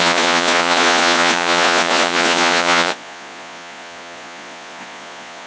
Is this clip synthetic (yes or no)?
yes